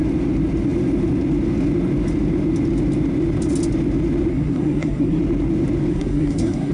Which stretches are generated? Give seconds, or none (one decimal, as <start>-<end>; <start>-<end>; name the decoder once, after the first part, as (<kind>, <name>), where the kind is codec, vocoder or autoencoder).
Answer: 4.3-5.2 (codec, SNAC); 5.9-6.7